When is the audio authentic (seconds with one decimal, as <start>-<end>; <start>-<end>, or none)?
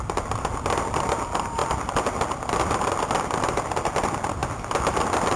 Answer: 0.0-5.4